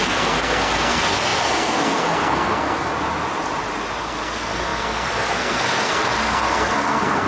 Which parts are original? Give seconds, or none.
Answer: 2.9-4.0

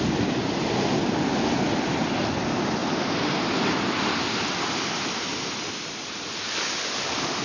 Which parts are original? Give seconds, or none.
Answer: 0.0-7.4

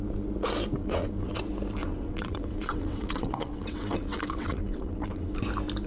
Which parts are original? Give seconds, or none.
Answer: 0.0-0.8; 1.4-1.8; 5.3-5.9

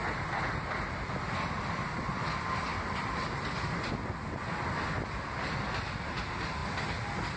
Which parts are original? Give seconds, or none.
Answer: 0.0-6.6

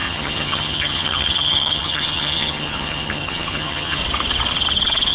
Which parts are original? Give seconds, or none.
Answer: 4.0-5.1